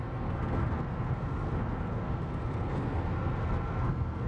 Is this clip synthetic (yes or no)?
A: yes